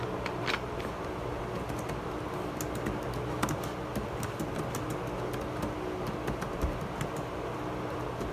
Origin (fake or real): real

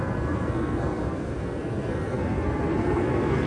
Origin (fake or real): fake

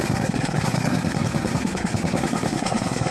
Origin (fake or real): fake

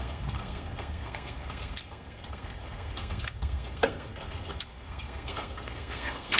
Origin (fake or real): fake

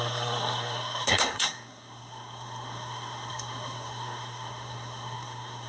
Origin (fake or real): fake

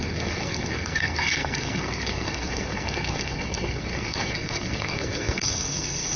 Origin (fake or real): fake